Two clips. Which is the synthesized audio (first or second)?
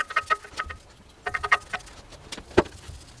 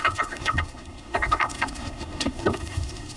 second